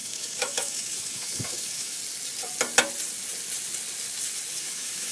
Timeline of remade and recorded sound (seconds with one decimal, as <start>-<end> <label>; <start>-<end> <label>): 0.0-2.0 remade; 2.0-4.6 recorded; 4.6-5.1 remade